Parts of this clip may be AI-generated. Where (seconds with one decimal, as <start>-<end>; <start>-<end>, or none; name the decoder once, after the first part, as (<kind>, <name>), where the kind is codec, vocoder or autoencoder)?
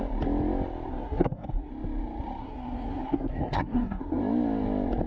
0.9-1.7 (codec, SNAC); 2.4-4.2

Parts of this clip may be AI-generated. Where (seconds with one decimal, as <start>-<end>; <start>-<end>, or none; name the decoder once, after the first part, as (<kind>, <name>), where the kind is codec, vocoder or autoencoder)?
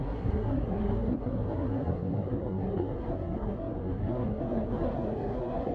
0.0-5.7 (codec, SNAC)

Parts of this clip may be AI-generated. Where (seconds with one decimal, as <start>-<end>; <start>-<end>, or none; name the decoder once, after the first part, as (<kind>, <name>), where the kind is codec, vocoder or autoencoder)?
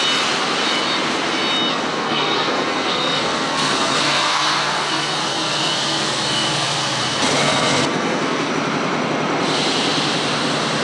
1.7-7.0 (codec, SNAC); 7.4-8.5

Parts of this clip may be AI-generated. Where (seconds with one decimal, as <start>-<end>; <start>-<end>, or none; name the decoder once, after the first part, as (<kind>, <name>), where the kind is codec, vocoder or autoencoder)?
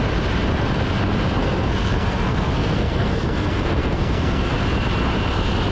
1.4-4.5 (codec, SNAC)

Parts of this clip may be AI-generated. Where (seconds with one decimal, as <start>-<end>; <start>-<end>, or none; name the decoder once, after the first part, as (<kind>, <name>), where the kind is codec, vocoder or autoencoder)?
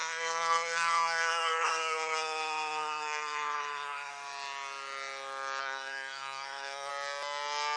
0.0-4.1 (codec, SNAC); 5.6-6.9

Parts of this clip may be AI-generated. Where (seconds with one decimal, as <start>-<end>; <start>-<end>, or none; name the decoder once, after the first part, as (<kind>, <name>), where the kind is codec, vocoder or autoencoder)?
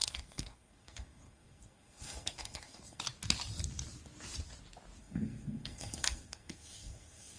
0.0-3.0 (codec, SNAC); 5.0-7.4